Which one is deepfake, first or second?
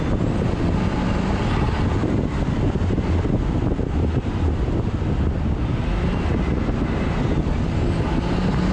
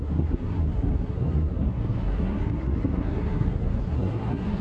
second